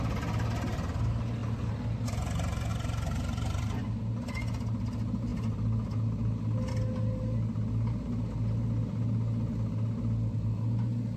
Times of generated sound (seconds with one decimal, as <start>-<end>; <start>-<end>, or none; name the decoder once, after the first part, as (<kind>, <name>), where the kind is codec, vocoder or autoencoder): none